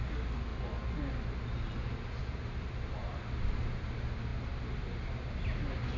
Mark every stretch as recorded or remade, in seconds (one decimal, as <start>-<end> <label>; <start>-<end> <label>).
0.0-6.0 recorded